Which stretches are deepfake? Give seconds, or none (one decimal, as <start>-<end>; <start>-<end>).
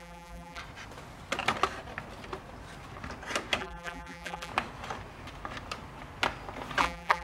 0.0-0.6; 3.6-4.5; 6.8-7.2